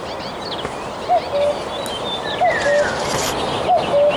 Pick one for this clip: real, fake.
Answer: real